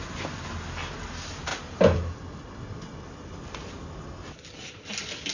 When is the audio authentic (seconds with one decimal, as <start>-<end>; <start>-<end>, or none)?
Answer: 0.0-5.3